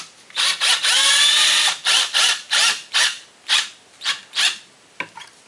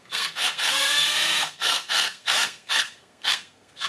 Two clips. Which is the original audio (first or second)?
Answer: first